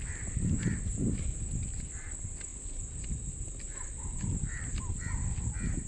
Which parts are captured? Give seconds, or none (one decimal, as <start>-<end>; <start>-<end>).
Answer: 0.0-5.9